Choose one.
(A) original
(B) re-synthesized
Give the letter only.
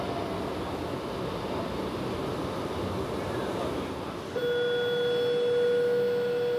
A